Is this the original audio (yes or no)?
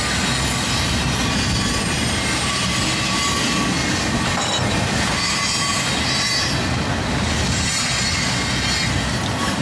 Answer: yes